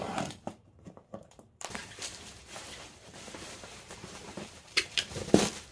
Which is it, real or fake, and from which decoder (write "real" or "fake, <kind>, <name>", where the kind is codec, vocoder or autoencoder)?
fake, vocoder, BigVGAN v2